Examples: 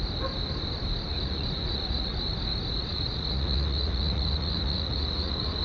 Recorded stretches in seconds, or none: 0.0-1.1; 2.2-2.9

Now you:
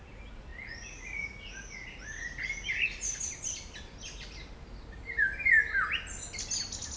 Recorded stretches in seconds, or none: 0.0-0.5; 3.2-7.0

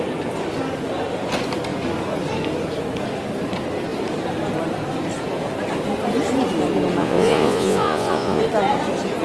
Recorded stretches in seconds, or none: 0.0-7.0; 8.4-9.2